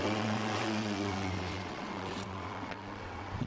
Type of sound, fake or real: fake